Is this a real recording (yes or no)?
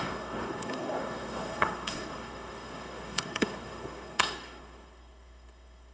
no